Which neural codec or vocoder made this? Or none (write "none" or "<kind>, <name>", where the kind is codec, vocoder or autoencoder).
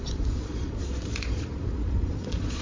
vocoder, Vocos